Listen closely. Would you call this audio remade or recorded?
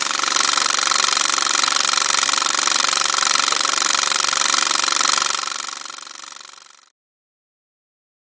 recorded